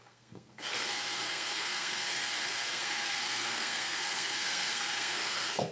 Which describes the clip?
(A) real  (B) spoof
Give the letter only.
B